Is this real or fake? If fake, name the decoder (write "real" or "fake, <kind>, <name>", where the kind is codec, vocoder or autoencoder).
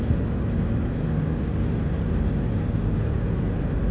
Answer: real